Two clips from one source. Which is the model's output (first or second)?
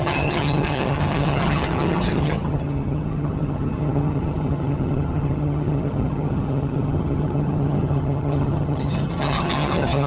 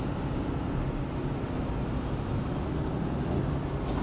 first